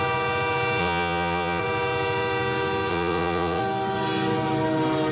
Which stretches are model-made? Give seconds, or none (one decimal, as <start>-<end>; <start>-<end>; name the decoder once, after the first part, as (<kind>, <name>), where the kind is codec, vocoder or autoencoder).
0.8-1.6 (vocoder, Vocos); 2.9-3.6